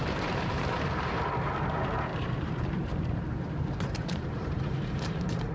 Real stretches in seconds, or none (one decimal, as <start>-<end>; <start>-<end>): 1.3-2.1